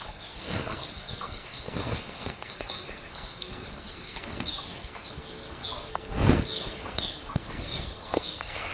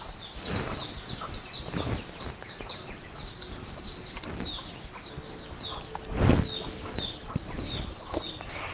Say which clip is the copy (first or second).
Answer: first